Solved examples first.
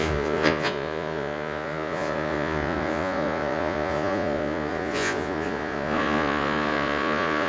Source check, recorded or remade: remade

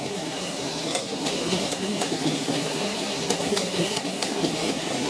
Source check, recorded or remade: remade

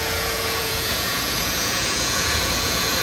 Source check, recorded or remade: remade